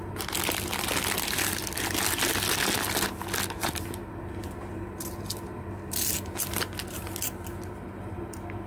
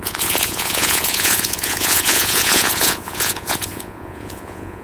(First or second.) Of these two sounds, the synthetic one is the second